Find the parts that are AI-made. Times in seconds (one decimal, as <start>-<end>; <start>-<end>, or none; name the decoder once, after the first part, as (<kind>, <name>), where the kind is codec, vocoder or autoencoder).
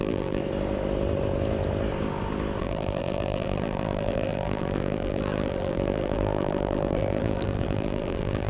0.0-0.4 (vocoder, BigVGAN v2); 2.6-8.5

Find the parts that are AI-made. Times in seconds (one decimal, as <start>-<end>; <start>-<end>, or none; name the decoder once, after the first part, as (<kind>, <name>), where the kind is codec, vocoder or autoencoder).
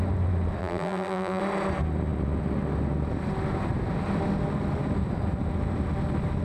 0.6-1.4 (vocoder, BigVGAN v2)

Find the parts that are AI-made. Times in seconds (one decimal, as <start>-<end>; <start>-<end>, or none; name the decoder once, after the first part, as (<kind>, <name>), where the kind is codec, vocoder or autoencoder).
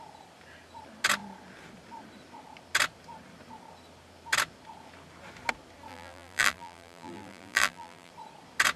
5.9-8.1 (vocoder, BigVGAN v2)